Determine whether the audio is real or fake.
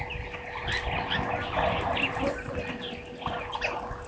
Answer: real